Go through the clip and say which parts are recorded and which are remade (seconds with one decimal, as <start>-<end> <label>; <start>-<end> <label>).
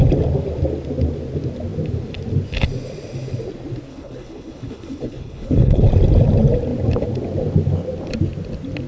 0.0-3.9 recorded; 3.9-5.9 remade; 5.9-8.9 recorded